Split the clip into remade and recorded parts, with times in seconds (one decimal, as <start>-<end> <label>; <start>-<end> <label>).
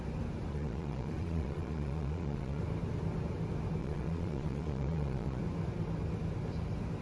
0.0-0.5 recorded; 0.5-2.6 remade; 2.6-3.8 recorded; 3.8-5.4 remade; 5.4-7.0 recorded